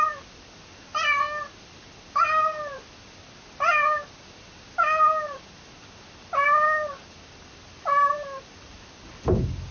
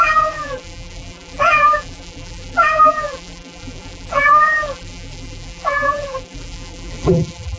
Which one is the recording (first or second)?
first